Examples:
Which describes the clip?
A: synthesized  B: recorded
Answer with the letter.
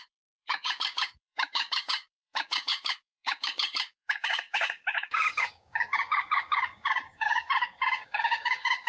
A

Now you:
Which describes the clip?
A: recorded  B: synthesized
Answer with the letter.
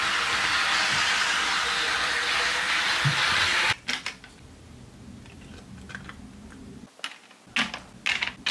A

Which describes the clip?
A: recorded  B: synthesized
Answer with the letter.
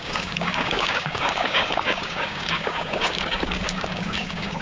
B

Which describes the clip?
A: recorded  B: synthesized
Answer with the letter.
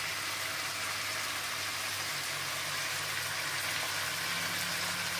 A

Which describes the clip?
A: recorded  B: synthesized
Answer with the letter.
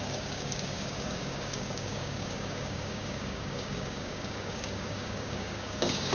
B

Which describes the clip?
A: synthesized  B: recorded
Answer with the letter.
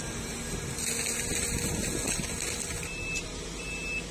B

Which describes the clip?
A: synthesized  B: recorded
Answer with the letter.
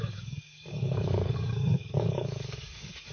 A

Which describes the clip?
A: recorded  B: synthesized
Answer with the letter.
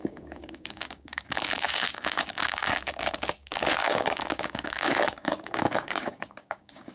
B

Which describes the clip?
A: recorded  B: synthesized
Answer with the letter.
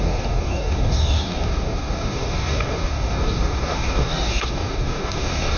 B